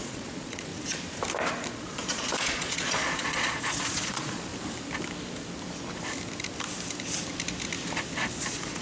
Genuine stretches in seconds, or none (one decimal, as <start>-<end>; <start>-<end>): 0.7-1.7; 4.5-8.4